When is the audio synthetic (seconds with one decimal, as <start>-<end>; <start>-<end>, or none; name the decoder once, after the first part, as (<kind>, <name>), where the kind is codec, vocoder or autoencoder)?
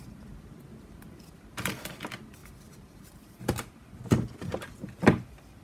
2.4-3.7 (vocoder, BigVGAN v2)